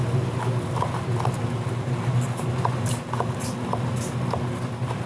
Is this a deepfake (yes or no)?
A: no